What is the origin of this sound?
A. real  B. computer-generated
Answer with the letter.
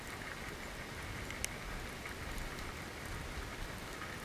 A